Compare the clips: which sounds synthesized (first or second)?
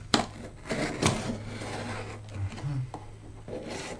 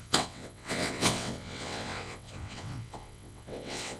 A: second